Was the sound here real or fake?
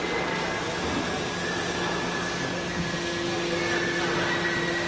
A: real